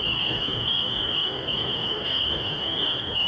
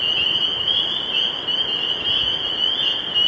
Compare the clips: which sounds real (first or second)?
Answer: second